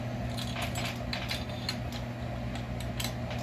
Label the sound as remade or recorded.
recorded